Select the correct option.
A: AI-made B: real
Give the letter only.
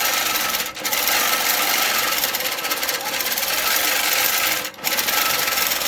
B